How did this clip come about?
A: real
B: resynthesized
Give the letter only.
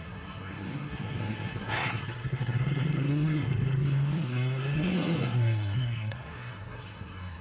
B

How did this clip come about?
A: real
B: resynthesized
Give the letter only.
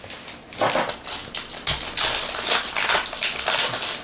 A